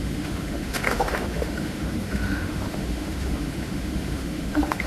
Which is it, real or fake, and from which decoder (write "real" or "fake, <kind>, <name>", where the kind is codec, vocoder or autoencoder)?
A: fake, autoencoder, DAC-VAE